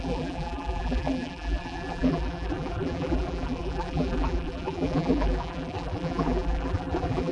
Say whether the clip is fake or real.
fake